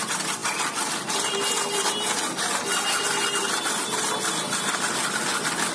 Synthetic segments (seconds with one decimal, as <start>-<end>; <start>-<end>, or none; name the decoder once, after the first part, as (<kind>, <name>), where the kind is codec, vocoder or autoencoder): none

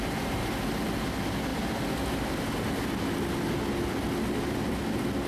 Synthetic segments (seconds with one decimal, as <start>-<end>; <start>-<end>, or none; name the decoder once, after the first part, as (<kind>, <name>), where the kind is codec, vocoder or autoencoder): none

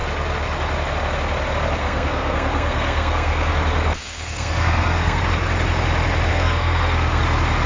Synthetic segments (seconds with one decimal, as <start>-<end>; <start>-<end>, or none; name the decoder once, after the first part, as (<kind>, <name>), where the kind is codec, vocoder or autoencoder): 1.8-3.5 (codec, SNAC); 4.0-5.2; 6.3-7.2

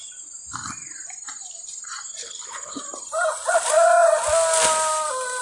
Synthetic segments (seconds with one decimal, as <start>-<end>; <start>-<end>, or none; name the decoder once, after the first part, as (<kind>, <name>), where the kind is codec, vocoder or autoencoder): 2.2-2.8 (codec, HILCodec)

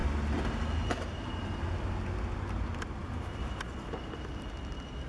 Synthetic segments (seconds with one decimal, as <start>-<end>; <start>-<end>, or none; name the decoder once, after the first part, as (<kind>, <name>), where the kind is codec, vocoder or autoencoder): 3.0-4.6 (vocoder, BigVGAN v2)

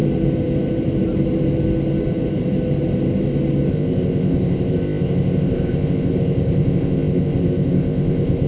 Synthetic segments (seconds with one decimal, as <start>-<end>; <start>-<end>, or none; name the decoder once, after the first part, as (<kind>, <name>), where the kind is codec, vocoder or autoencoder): 3.7-8.5 (codec, ZipCodec)